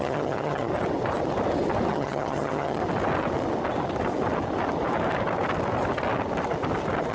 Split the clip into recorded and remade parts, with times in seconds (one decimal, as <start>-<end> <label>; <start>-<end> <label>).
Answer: 0.0-0.7 remade; 0.7-1.9 recorded; 1.9-2.8 remade; 2.8-7.1 recorded